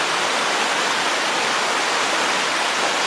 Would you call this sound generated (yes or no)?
no